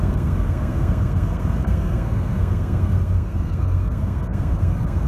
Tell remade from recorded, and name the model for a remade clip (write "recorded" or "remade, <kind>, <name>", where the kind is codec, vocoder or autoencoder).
remade, codec, SNAC